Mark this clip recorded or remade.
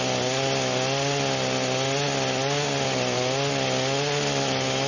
recorded